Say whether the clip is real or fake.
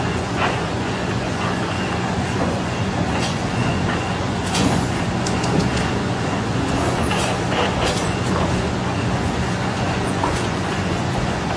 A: fake